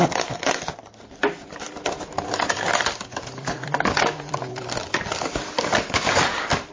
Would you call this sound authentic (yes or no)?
no